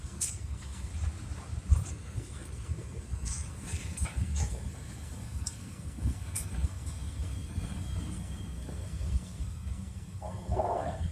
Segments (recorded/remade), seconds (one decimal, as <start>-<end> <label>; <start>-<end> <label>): 0.0-0.9 remade; 0.9-1.9 recorded; 1.9-11.1 remade